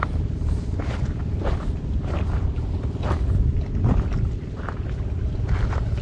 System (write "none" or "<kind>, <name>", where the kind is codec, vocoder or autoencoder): none